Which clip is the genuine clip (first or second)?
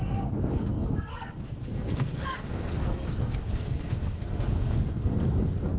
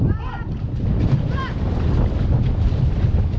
second